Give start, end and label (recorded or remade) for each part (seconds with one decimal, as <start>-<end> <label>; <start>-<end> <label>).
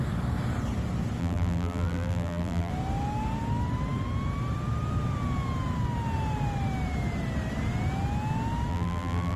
0.0-1.2 recorded; 1.2-2.7 remade; 2.7-8.7 recorded; 8.7-9.4 remade